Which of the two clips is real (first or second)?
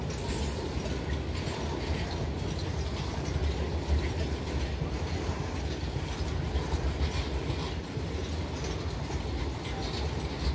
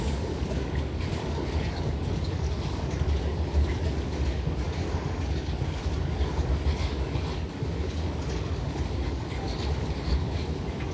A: first